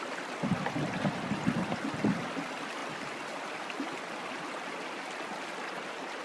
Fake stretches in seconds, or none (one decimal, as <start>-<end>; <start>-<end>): none